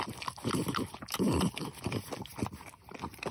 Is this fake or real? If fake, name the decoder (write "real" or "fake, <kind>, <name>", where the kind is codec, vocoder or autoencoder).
real